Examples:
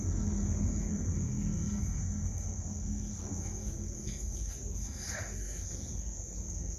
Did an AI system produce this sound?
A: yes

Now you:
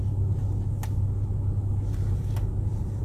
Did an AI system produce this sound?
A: no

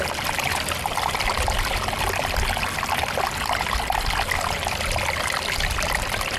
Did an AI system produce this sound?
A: no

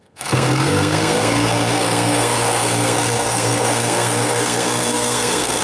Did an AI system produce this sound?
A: yes